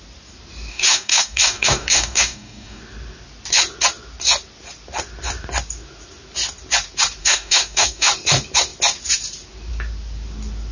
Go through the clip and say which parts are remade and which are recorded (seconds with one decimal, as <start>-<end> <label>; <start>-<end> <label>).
0.0-0.7 recorded; 0.7-2.8 remade; 2.8-7.2 recorded; 7.2-8.1 remade; 8.1-10.7 recorded